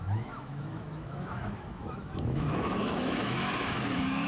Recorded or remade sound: remade